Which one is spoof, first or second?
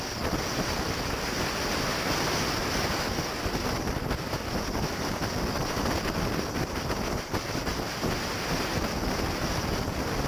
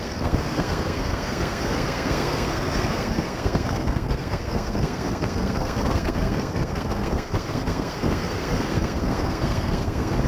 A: second